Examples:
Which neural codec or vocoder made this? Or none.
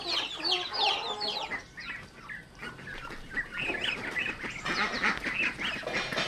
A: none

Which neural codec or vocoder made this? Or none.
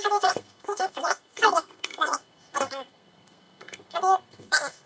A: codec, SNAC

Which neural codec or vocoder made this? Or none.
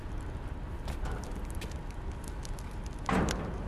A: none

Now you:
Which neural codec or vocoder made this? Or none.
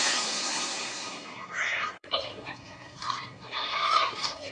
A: codec, SNAC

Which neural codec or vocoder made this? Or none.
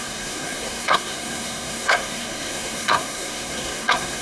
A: codec, SNAC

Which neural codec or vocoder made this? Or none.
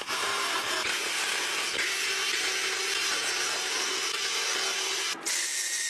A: none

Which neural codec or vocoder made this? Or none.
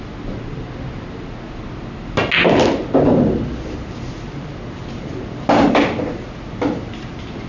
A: none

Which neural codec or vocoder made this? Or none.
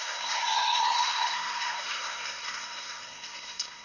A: codec, SNAC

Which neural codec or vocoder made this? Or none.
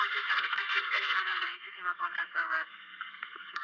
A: codec, SNAC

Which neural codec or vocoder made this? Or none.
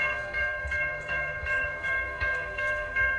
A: codec, SNAC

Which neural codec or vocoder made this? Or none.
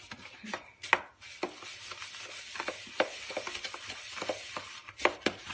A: none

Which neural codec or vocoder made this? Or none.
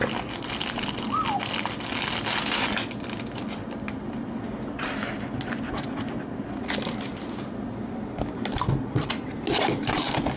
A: none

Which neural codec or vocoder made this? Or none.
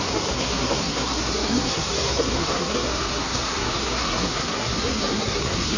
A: codec, SNAC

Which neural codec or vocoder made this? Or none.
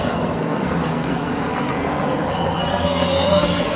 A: codec, SNAC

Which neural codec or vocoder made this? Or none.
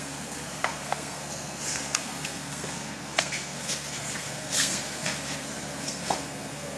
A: codec, SNAC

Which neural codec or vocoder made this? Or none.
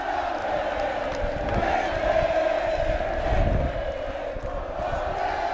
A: none